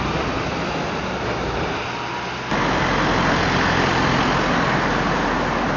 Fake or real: real